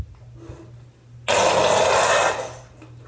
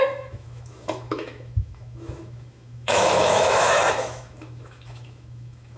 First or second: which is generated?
second